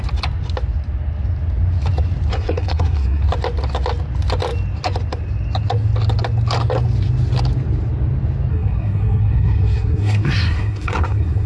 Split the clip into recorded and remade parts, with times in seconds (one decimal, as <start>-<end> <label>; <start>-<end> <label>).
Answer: 0.0-2.3 recorded; 2.3-3.2 remade; 3.2-8.5 recorded; 8.5-11.5 remade